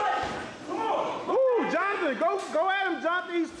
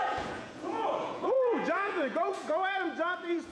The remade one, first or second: second